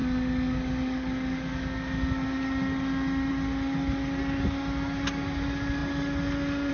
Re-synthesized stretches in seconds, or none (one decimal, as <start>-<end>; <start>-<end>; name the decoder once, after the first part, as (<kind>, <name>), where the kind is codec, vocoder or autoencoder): none